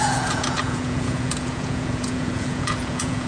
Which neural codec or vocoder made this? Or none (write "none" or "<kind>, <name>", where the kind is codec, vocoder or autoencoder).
vocoder, Vocos